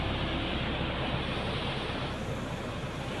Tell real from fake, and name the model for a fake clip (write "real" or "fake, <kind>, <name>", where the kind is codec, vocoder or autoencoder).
real